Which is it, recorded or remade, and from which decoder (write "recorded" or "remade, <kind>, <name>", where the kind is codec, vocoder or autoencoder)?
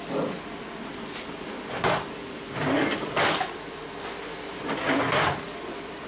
recorded